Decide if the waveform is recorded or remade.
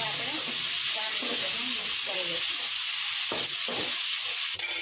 recorded